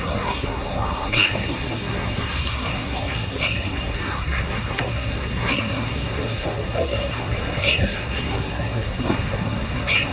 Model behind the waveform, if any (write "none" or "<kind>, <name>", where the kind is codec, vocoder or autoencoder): codec, SNAC